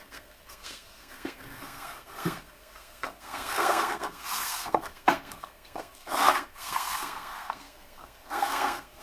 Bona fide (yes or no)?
no